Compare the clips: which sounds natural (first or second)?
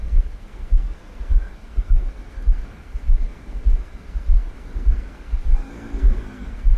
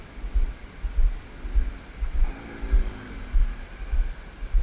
second